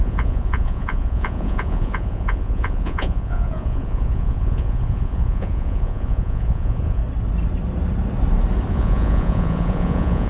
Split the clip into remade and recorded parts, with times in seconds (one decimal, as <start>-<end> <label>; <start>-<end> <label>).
0.0-7.0 remade; 7.0-8.7 recorded; 8.7-10.3 remade